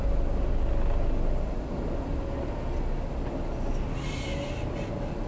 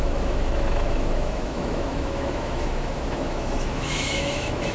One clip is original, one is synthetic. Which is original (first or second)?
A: first